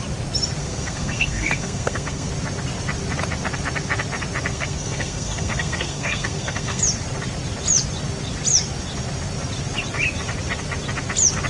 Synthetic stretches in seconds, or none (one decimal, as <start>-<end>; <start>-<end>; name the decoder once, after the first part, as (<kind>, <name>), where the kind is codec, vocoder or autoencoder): 0.6-2.3 (codec, SNAC); 4.5-6.8